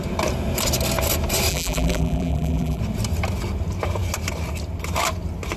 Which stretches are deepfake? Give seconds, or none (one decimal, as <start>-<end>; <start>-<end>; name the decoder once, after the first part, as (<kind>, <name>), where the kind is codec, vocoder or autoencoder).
1.5-2.8 (vocoder, BigVGAN v2)